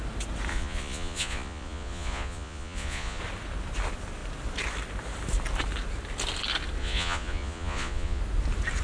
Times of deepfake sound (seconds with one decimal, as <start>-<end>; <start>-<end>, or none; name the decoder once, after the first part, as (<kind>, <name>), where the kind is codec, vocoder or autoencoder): 0.5-3.2 (vocoder, Vocos); 6.8-8.2